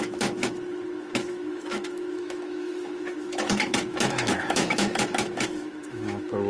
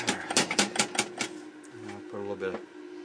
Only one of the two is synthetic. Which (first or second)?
first